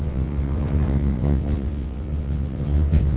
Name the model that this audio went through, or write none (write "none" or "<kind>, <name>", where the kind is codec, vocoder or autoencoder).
vocoder, WaveNeXt